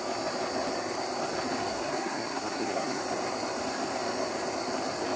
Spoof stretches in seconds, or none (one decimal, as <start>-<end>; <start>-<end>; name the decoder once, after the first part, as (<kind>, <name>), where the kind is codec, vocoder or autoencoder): 1.7-3.0 (codec, SNAC)